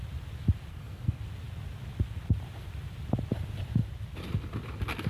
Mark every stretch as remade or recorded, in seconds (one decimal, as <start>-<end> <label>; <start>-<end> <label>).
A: 0.0-0.7 recorded; 0.7-1.2 remade; 1.2-5.1 recorded